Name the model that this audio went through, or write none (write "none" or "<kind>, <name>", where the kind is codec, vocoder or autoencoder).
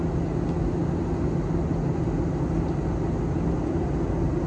none